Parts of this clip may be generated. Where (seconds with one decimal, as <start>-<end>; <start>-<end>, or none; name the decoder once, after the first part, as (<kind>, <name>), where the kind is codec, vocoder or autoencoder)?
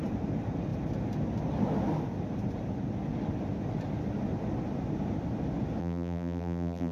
5.8-6.9 (vocoder, BigVGAN v2)